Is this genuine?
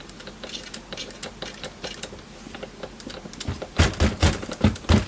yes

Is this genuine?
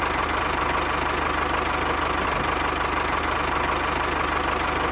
yes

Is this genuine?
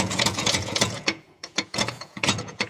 no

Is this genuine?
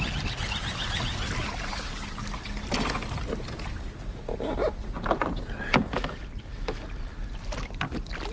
yes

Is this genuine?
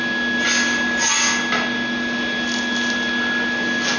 yes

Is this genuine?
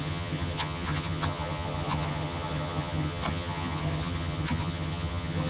no